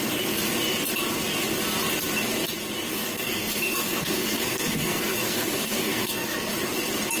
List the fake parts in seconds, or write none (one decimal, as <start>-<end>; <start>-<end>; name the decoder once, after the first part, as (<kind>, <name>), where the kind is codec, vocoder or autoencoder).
2.9-6.5 (codec, SNAC)